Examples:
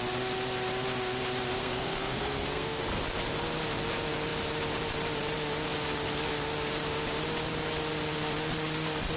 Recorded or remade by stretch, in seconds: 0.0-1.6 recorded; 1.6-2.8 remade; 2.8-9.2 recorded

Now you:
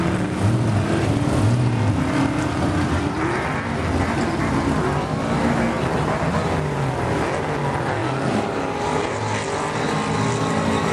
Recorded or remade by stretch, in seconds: 0.0-10.9 recorded

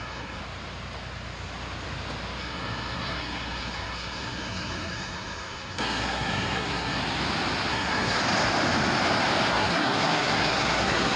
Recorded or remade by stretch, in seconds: 0.0-0.4 remade; 0.4-2.4 recorded; 2.4-7.0 remade; 7.0-7.7 recorded; 7.7-8.2 remade; 8.2-9.5 recorded; 9.5-11.2 remade

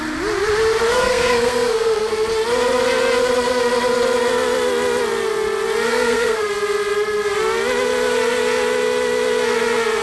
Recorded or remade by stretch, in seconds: 0.0-0.9 recorded; 0.9-2.1 remade; 2.1-5.9 recorded; 5.9-6.5 remade; 6.5-10.0 recorded